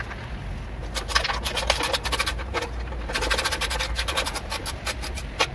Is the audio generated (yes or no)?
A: no